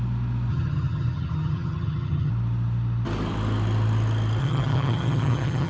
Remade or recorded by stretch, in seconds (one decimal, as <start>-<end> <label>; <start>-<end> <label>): 0.0-0.5 recorded; 0.5-2.3 remade; 2.3-4.4 recorded; 4.4-5.7 remade